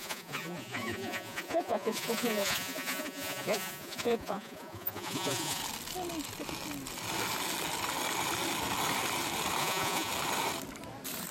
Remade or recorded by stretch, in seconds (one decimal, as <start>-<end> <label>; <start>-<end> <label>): 0.0-5.6 remade; 5.6-9.6 recorded; 9.6-10.1 remade; 10.1-11.3 recorded